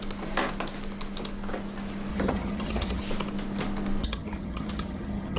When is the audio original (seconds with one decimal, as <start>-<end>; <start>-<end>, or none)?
0.0-2.1; 3.0-4.0

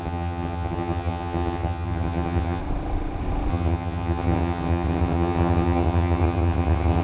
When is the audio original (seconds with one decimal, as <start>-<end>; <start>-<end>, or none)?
2.6-3.5